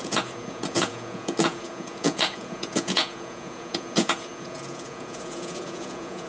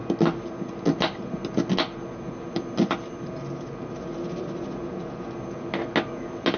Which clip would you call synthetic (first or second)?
first